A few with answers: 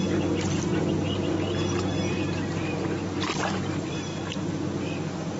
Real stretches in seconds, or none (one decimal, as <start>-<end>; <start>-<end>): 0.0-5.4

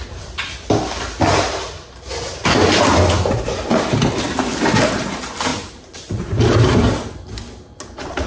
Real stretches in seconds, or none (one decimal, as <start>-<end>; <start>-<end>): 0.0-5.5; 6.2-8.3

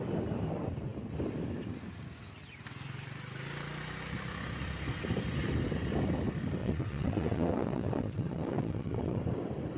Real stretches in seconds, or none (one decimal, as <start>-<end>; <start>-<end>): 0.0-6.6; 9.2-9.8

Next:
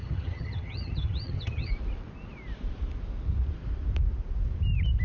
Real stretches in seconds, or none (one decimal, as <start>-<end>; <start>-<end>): 1.7-5.0

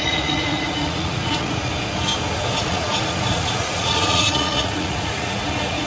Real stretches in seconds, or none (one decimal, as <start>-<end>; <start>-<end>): 1.7-2.6

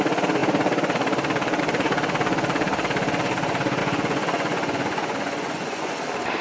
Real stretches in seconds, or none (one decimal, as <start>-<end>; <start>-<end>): 0.0-3.8; 5.9-6.4

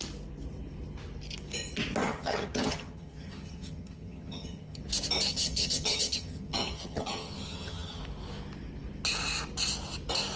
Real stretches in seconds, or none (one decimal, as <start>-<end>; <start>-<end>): 0.0-2.0; 4.8-5.3; 8.0-10.4